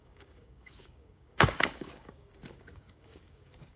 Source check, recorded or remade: remade